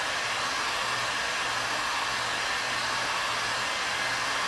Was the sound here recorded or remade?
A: recorded